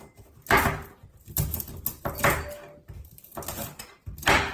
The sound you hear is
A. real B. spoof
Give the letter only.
A